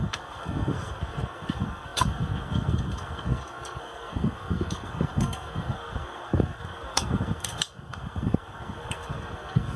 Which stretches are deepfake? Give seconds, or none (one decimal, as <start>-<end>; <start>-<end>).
0.0-9.8